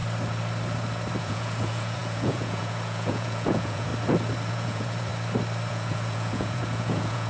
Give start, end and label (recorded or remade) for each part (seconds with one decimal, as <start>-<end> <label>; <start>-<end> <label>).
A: 0.0-1.2 recorded; 1.2-3.9 remade; 3.9-4.5 recorded; 4.5-5.1 remade; 5.1-5.7 recorded; 5.7-7.3 remade